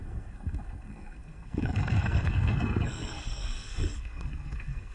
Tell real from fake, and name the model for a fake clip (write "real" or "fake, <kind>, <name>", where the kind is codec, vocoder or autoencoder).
fake, codec, SNAC